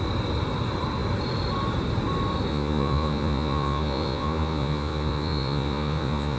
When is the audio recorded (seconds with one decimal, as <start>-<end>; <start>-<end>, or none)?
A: 0.0-2.5